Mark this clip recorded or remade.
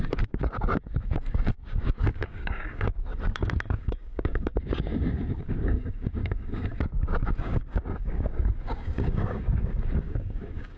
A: remade